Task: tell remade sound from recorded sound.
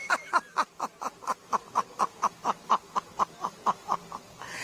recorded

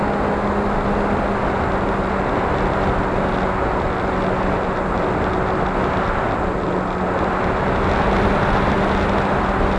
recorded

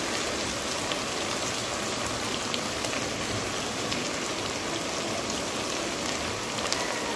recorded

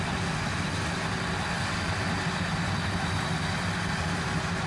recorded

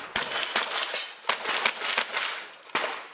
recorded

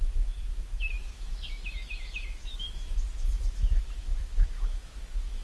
remade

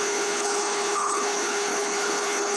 remade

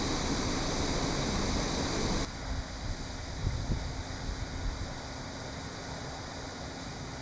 recorded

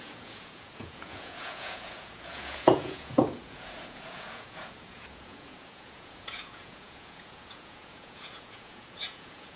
remade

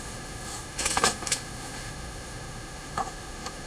remade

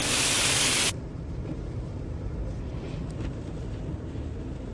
recorded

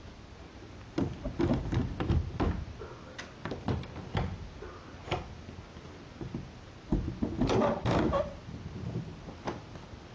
recorded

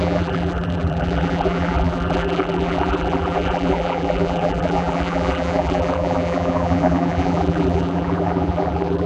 remade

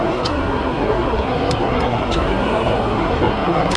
remade